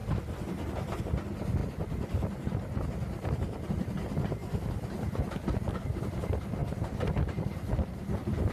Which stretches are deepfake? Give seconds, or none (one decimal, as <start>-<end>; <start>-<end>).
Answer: none